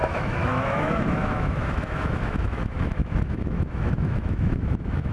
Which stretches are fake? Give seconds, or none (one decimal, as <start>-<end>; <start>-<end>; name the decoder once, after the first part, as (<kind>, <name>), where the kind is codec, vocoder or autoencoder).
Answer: 0.0-5.1 (autoencoder, DAC-VAE)